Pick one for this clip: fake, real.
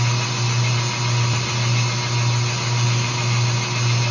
real